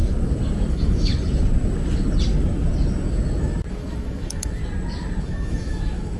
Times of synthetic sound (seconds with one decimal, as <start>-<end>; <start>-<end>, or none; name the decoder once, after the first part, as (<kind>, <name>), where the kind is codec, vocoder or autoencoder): 0.7-1.1 (autoencoder, DAC-VAE); 3.7-4.6; 5.2-6.2